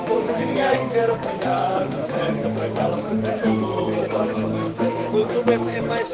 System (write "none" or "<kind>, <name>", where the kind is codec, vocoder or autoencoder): codec, DAC